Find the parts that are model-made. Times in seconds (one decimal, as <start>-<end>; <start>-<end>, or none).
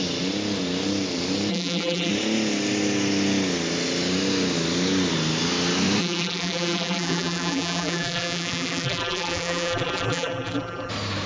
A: 1.5-2.1; 6.0-10.9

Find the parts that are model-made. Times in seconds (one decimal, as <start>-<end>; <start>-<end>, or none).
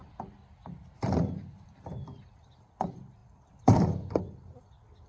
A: 0.0-5.1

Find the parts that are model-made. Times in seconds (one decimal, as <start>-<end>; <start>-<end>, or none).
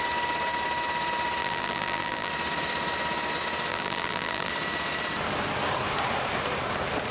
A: 1.4-2.3; 3.7-4.5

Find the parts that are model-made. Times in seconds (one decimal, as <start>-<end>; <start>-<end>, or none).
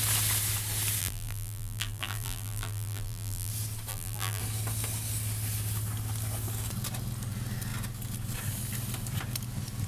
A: 1.0-3.5; 3.9-4.4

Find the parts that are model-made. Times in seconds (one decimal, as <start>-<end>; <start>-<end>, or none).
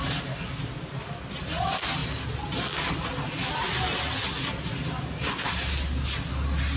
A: none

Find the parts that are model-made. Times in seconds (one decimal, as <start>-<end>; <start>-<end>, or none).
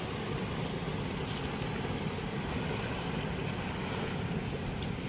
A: none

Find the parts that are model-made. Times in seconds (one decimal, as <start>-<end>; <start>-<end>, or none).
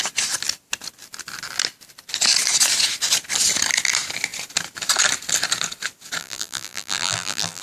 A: 6.2-7.6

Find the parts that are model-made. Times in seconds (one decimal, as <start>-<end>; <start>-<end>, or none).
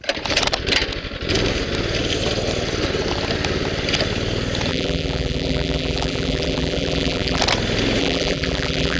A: 4.7-7.4; 8.0-9.0